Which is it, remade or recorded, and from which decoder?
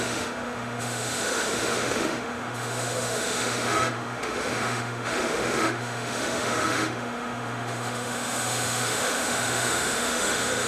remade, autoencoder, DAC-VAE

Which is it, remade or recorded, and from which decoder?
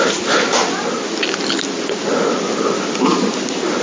recorded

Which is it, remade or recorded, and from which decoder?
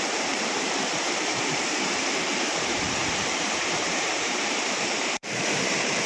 remade, vocoder, BigVGAN v2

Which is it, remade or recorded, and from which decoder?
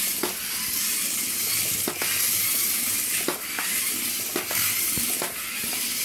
recorded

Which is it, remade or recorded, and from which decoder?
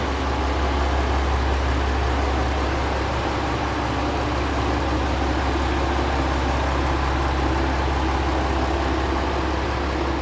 recorded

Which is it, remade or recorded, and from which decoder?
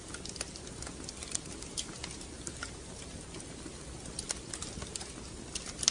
recorded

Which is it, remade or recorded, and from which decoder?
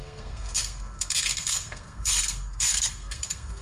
remade, codec, SNAC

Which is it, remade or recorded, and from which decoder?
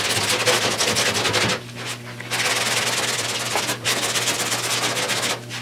recorded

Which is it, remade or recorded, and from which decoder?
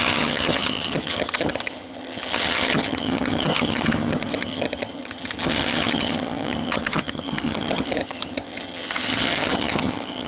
remade, vocoder, HiFi-GAN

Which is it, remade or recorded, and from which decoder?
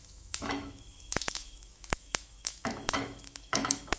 remade, autoencoder, DAC-VAE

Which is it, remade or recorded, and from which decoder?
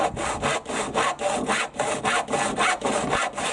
recorded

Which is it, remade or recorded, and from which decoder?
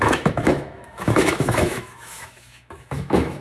remade, autoencoder, DAC-VAE